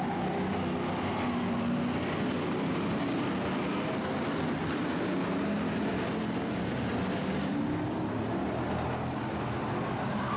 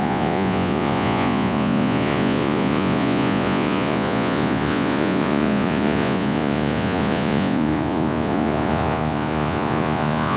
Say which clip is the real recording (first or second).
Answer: first